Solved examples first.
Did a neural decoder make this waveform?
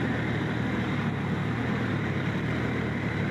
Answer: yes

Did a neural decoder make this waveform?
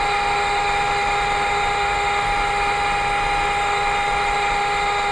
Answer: yes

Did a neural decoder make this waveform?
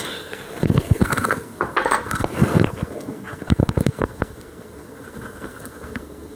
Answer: yes